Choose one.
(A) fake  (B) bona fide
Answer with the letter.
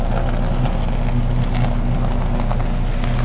B